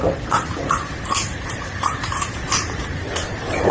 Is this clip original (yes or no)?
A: no